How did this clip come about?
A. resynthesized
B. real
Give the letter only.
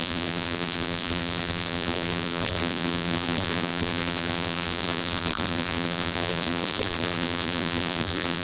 A